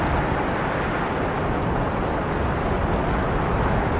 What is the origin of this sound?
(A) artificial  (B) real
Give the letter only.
B